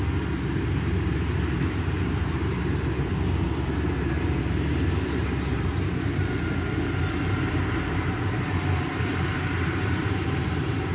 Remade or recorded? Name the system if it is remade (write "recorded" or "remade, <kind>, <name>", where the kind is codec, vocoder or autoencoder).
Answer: remade, vocoder, BigVGAN v2